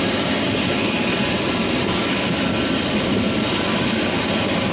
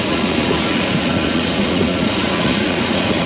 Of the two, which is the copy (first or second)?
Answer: second